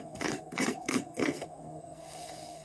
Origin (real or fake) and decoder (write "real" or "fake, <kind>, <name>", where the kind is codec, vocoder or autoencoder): fake, codec, SNAC